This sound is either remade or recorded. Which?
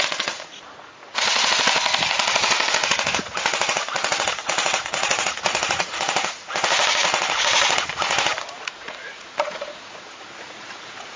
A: remade